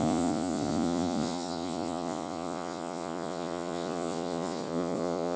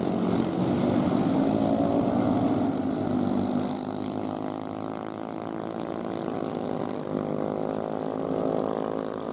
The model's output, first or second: first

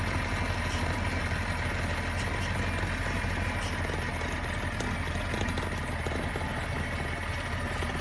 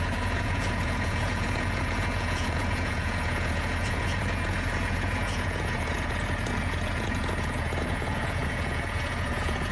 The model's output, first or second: second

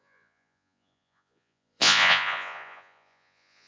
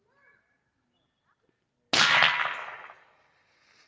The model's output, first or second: first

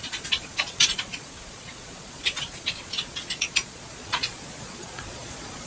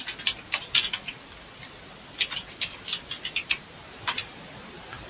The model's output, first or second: first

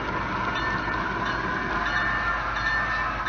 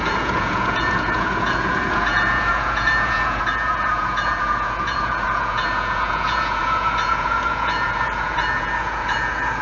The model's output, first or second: second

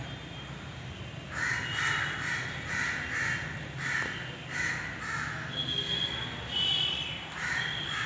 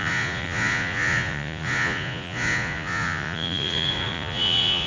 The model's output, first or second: second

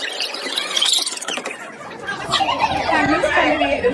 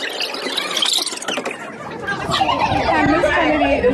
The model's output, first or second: first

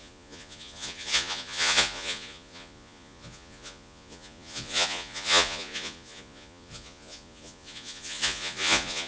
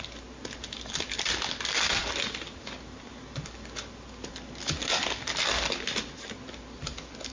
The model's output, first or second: first